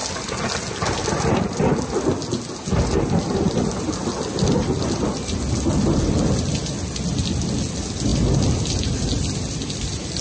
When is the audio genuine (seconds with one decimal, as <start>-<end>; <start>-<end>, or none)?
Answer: 0.0-10.2